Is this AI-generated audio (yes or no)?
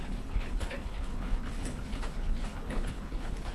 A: yes